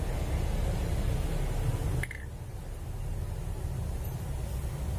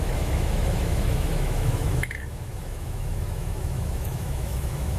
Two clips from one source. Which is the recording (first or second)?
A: first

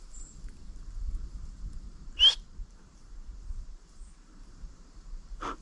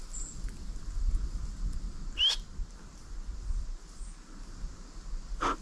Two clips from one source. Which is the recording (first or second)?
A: second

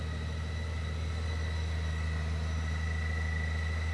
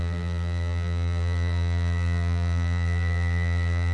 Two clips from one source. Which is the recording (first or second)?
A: first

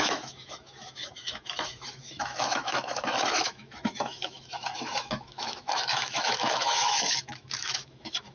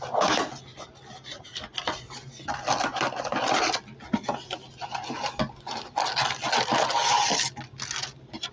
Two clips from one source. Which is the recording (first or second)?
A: second